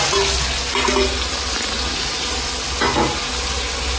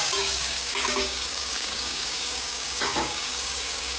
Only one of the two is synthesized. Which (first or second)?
second